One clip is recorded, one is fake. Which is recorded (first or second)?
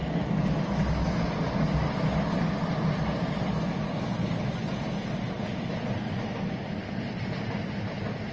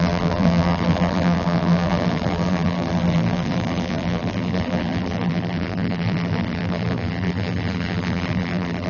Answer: first